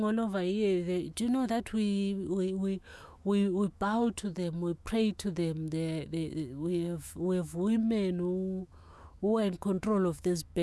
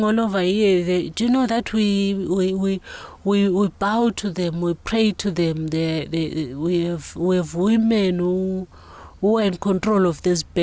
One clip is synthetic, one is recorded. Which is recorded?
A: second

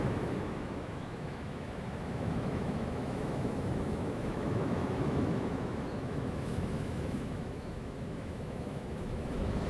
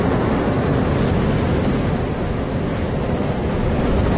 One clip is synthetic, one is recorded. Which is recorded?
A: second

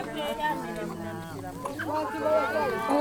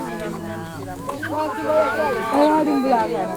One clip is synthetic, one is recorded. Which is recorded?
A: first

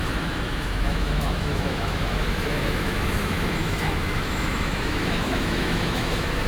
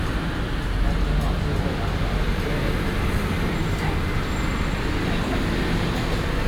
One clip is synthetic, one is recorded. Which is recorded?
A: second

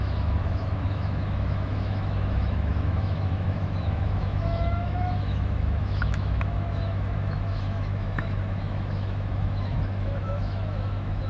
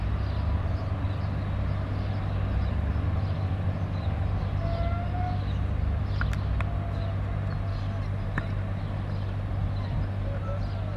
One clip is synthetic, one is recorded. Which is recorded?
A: second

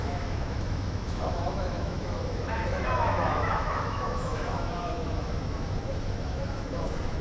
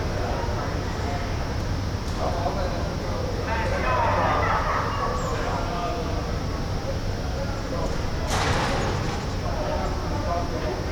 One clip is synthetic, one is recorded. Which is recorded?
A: second